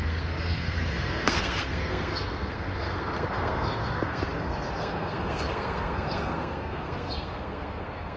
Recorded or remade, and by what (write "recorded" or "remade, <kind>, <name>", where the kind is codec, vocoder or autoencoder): remade, codec, SNAC